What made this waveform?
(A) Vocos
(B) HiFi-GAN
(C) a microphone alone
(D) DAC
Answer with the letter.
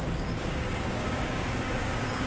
D